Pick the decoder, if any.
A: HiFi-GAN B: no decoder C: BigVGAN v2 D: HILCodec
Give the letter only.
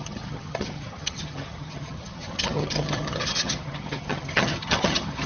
A